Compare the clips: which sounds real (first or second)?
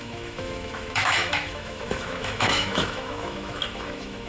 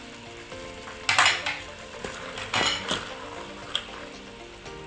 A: second